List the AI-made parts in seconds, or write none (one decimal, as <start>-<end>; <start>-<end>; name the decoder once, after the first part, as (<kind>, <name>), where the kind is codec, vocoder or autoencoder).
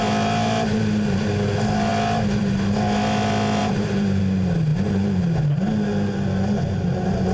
3.6-4.2 (vocoder, BigVGAN v2); 4.7-5.2